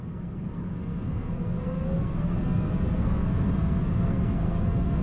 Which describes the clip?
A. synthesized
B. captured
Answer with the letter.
A